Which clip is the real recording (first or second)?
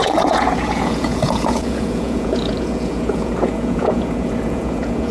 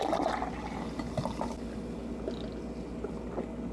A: second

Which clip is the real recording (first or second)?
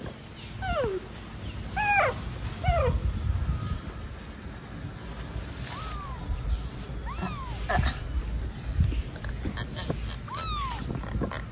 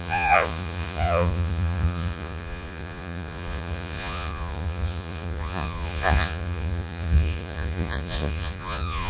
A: first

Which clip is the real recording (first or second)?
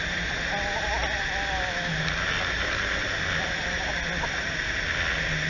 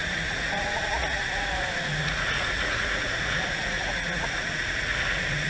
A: first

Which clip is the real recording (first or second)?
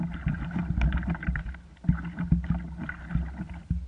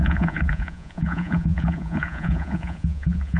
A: first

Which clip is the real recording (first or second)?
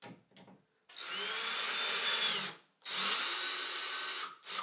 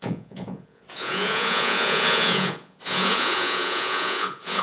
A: first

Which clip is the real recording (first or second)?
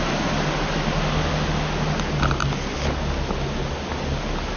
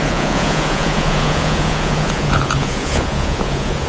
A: first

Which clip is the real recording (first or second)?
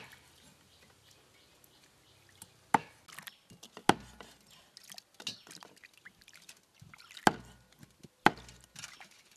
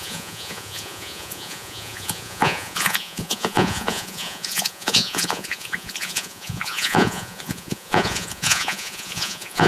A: first